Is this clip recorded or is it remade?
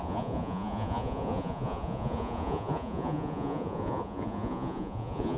remade